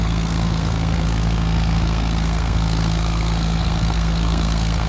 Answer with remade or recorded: remade